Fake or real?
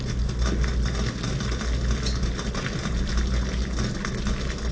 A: real